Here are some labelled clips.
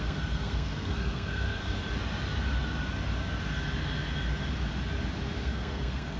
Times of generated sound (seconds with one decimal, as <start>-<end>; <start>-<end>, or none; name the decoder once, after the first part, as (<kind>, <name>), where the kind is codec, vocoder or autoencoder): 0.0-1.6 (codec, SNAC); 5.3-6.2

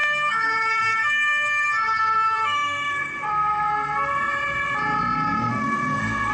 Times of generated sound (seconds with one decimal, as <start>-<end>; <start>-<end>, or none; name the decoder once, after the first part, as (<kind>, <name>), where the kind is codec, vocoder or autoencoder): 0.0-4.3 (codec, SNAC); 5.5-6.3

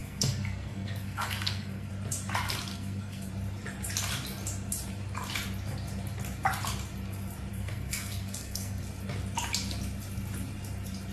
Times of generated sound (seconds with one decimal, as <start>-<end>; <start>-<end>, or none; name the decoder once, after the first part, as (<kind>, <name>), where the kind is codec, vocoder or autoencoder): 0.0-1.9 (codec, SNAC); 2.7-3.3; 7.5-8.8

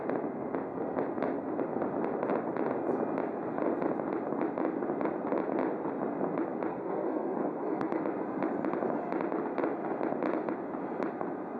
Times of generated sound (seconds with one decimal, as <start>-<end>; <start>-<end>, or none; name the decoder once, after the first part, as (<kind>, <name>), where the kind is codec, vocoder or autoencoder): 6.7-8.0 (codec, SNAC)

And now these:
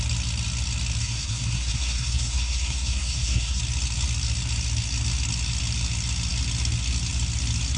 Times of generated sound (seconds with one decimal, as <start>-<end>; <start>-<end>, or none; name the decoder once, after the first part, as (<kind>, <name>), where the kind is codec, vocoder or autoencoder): 1.0-3.6 (codec, SNAC)

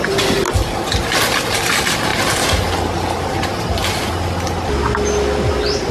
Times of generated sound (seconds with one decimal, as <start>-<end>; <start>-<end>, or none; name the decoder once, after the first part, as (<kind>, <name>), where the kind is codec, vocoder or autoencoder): none